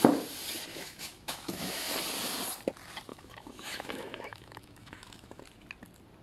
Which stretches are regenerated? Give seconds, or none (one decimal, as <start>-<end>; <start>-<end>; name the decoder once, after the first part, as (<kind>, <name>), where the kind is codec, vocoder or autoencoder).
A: 0.7-1.9 (autoencoder, DAC-VAE); 3.1-5.4